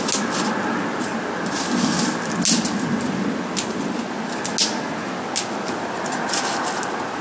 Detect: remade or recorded recorded